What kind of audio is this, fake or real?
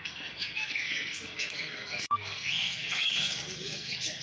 fake